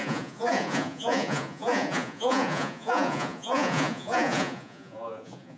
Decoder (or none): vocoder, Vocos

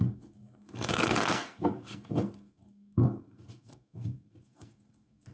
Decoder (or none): codec, SNAC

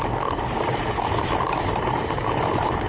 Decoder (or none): none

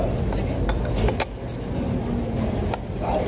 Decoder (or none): none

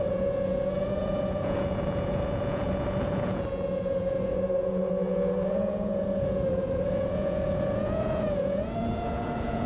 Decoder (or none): vocoder, Vocos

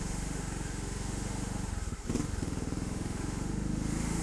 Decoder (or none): autoencoder, DAC-VAE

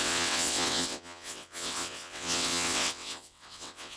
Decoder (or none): vocoder, WaveNeXt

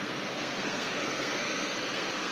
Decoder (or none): codec, SNAC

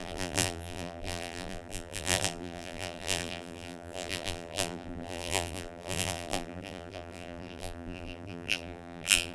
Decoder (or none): vocoder, BigVGAN v2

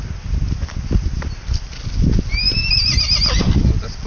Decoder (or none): none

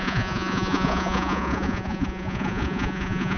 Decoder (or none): vocoder, Vocos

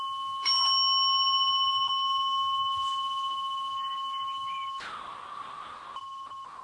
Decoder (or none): none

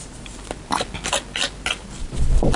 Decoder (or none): none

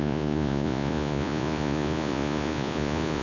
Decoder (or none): vocoder, Vocos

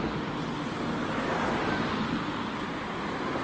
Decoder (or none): none